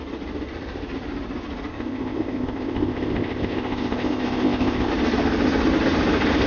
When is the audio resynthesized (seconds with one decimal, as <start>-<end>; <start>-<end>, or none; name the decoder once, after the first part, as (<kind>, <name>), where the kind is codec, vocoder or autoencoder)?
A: 1.7-4.9 (codec, ZipCodec)